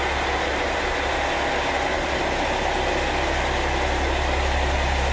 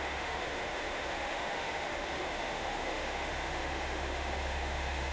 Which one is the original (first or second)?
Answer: first